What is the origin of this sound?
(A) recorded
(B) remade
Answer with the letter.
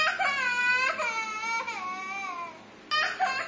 A